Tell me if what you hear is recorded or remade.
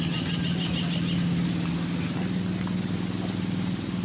recorded